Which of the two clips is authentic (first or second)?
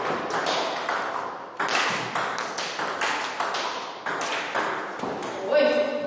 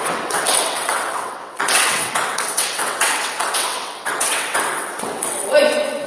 first